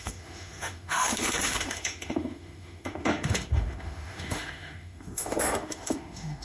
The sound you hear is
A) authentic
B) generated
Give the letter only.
B